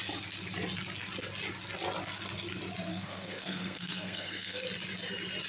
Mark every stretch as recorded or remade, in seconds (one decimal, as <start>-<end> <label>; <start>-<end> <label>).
0.0-2.9 recorded; 2.9-4.6 remade; 4.6-5.5 recorded